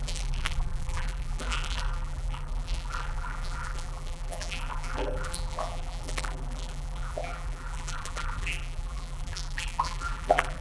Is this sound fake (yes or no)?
yes